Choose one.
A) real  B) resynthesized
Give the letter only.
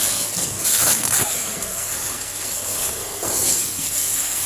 B